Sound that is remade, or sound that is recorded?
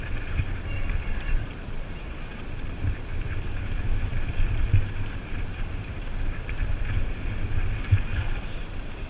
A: remade